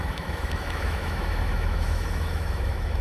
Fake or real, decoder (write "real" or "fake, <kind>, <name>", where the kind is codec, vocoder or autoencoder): fake, autoencoder, DAC-VAE